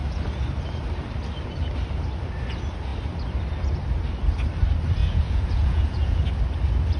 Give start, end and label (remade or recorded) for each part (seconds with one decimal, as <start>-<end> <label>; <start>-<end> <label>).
0.0-5.0 recorded; 5.0-6.2 remade; 6.2-7.0 recorded